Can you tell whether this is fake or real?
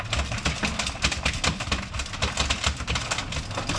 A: real